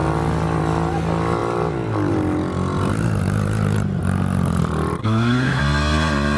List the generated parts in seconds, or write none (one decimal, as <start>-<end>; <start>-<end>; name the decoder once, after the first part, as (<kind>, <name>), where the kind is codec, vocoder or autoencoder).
5.0-5.6 (codec, SNAC)